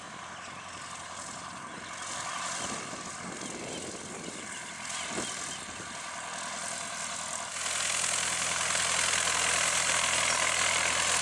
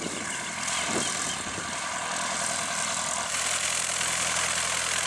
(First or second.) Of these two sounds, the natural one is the first